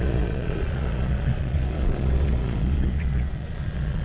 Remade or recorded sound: remade